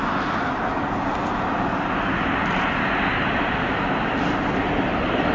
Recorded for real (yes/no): yes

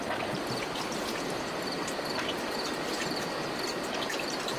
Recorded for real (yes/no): yes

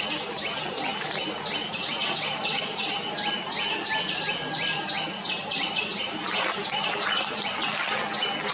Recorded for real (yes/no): yes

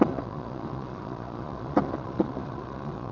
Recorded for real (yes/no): no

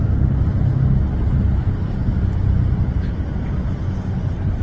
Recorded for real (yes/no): yes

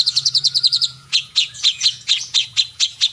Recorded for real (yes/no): no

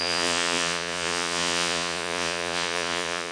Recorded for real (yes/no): no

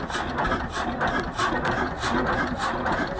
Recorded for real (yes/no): yes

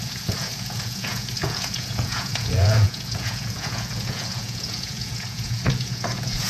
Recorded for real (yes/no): no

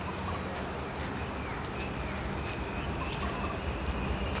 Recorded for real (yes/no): yes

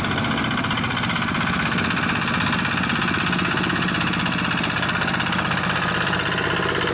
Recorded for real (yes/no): yes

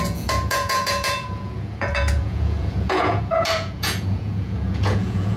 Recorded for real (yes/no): no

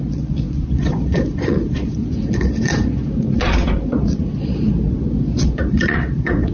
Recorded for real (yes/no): no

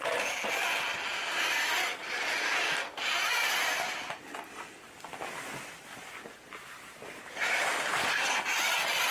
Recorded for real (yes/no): yes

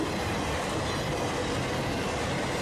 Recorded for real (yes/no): yes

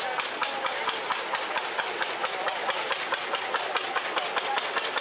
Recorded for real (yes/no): yes